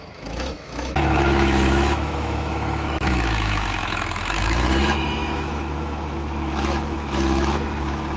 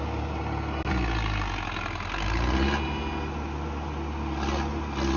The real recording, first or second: second